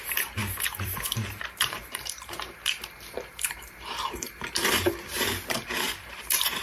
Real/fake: fake